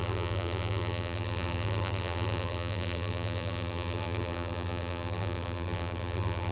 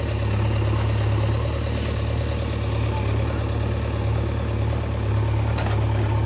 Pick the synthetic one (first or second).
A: first